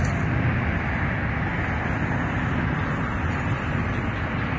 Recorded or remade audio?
recorded